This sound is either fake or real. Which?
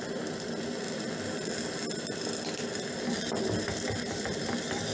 real